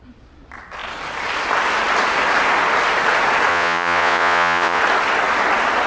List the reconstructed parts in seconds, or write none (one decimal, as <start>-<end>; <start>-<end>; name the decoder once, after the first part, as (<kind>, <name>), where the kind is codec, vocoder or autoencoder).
3.5-4.8 (vocoder, Vocos)